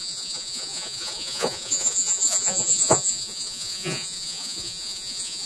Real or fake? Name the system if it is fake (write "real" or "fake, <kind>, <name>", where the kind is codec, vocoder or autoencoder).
fake, vocoder, Vocos